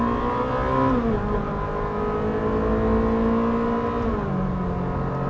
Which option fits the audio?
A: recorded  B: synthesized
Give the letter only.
A